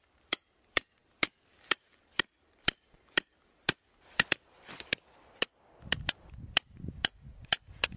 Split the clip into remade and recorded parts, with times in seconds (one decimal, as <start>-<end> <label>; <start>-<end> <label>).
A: 0.0-8.0 remade